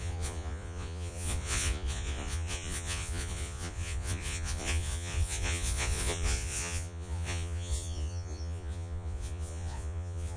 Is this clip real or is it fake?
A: fake